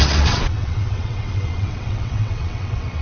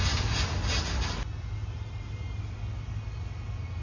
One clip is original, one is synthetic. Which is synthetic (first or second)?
first